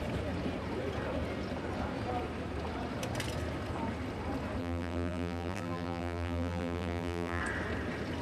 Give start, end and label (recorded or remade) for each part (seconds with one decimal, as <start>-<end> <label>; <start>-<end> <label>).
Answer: 0.0-4.6 recorded; 4.6-7.4 remade; 7.4-8.2 recorded